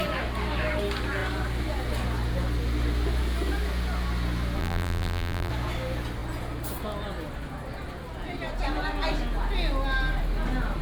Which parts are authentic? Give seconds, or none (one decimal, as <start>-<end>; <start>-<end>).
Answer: 0.0-4.6; 5.5-10.8